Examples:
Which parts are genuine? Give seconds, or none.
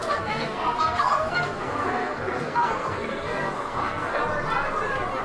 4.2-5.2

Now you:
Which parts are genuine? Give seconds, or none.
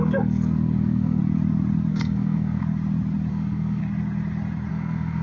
1.2-1.9; 2.6-3.3; 3.8-4.7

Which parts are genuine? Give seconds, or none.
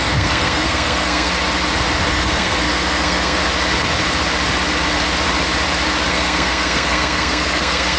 1.3-2.1; 3.4-6.1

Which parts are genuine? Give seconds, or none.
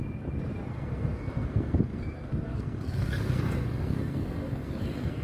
0.0-0.7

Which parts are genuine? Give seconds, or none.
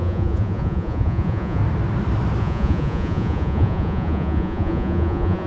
1.6-2.4